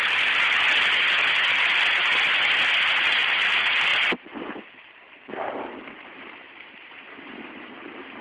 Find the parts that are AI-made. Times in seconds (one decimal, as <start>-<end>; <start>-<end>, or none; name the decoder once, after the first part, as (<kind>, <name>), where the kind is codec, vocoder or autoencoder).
none